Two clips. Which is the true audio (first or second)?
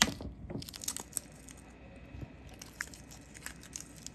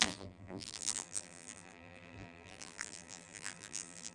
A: first